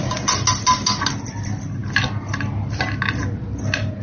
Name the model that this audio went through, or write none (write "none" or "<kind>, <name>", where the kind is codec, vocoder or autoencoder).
none